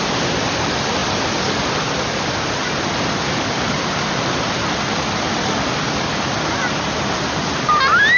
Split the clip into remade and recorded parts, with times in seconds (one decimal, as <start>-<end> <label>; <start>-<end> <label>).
0.0-8.2 recorded